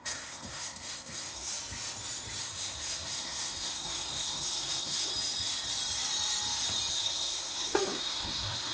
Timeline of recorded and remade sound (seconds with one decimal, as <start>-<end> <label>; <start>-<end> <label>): 0.0-1.5 remade; 1.5-2.4 recorded; 2.4-5.1 remade; 5.1-6.9 recorded; 6.9-8.7 remade